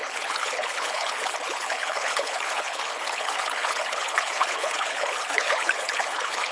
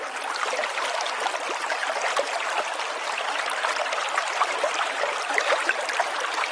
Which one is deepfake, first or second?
first